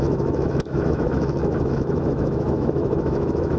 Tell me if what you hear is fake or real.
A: fake